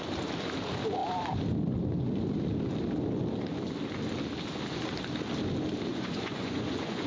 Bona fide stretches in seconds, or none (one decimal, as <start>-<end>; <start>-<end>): 0.0-5.9